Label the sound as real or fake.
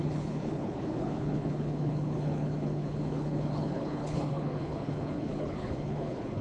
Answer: fake